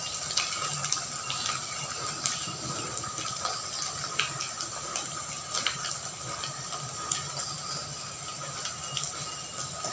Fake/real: real